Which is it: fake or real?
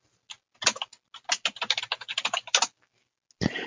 real